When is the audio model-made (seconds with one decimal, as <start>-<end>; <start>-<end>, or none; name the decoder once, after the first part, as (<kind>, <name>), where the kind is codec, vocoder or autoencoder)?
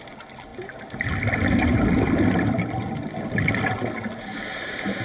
none